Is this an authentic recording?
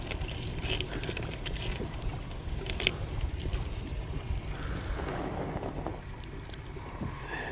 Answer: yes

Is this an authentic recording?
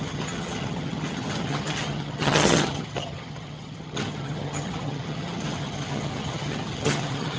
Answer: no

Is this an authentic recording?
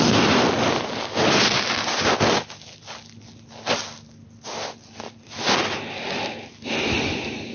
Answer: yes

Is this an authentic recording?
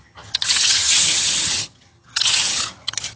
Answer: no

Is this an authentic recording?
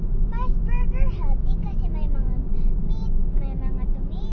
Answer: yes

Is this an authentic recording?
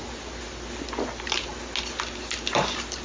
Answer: yes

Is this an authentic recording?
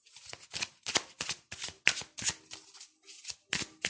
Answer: yes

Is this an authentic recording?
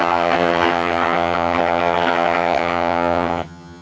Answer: no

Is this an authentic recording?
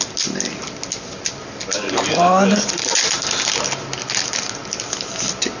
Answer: yes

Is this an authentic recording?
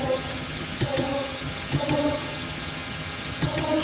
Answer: no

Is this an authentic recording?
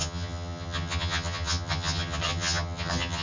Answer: no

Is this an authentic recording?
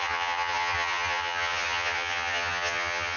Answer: no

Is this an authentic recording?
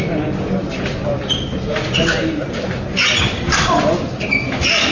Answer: yes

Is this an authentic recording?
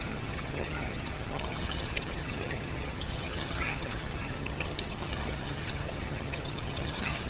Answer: no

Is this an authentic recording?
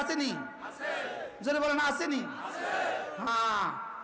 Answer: yes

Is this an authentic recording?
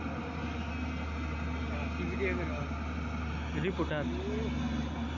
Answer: yes